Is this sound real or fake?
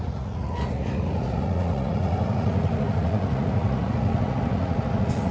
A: fake